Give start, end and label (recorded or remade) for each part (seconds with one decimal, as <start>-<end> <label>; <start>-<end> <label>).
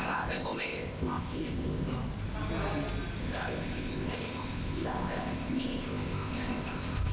0.0-1.9 remade; 1.9-3.2 recorded; 3.2-7.1 remade